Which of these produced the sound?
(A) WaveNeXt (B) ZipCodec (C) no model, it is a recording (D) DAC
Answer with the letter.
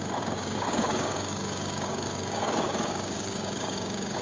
D